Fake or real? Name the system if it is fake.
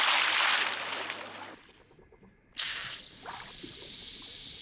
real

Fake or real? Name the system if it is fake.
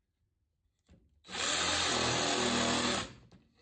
real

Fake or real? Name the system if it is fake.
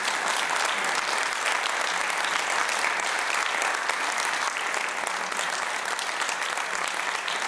real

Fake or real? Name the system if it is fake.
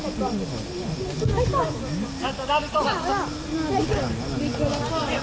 real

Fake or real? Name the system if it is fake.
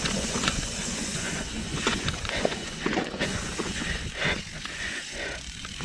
fake, vocoder, Vocos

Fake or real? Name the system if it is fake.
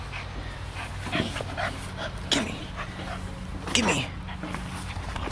real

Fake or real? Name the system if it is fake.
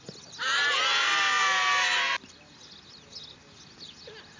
real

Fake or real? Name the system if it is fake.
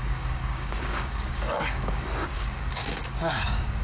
fake, codec, DAC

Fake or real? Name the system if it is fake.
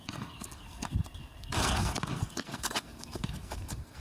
fake, codec, SNAC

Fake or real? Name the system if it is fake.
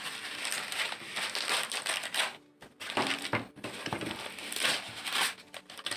real